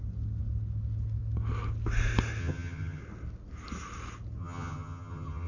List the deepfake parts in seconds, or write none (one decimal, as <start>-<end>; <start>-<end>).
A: 2.4-3.0; 4.4-5.5